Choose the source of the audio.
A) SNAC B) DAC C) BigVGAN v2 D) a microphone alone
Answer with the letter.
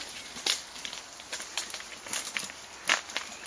D